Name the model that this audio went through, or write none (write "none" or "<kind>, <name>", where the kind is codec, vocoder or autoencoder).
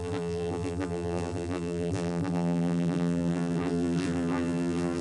vocoder, BigVGAN v2